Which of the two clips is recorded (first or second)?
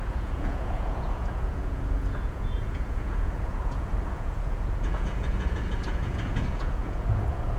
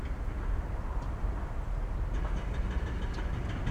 second